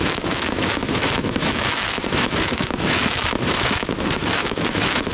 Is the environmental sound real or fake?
fake